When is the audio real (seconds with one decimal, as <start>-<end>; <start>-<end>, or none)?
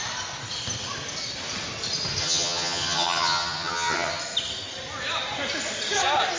0.0-2.2; 4.2-6.4